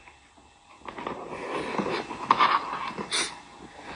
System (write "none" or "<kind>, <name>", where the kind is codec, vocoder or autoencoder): none